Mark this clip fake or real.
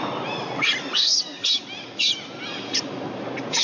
real